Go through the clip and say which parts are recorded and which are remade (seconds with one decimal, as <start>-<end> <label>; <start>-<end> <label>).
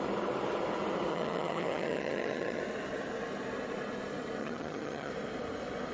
0.0-1.1 recorded; 1.1-2.6 remade; 2.6-4.4 recorded; 4.4-5.1 remade; 5.1-5.9 recorded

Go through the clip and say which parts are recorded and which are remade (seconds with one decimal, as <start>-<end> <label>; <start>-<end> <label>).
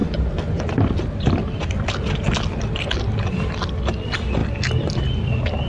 0.0-5.7 recorded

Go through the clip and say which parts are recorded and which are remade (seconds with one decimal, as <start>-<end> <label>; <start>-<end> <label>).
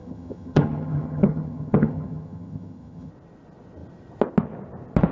0.0-3.1 remade; 3.1-5.1 recorded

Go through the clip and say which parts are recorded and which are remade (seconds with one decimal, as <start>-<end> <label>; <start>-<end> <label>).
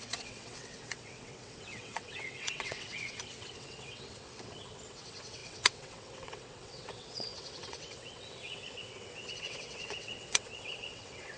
0.0-11.4 remade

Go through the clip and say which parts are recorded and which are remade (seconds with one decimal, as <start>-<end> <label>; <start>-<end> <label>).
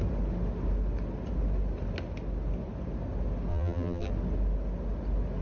0.0-3.5 recorded; 3.5-4.1 remade; 4.1-5.4 recorded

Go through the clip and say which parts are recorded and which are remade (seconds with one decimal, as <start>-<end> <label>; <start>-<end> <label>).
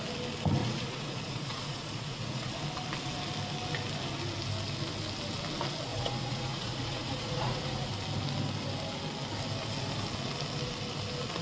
0.0-0.6 recorded; 0.6-2.5 remade; 2.5-5.9 recorded; 5.9-7.9 remade; 7.9-11.4 recorded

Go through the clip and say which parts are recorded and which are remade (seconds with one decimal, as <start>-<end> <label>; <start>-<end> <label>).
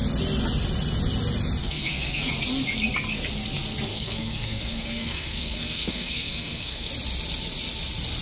0.0-1.6 recorded; 1.6-2.3 remade; 2.3-3.9 recorded; 3.9-6.9 remade; 6.9-8.2 recorded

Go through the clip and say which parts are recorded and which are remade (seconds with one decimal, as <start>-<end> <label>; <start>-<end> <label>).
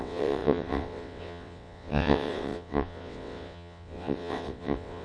0.0-5.0 remade